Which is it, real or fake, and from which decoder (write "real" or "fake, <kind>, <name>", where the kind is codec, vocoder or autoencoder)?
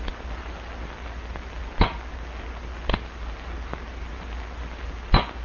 real